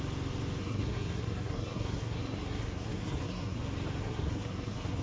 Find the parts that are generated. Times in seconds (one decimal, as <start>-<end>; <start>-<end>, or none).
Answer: 0.6-3.6; 4.0-5.0